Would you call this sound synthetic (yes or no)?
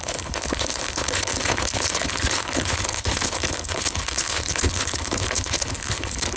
yes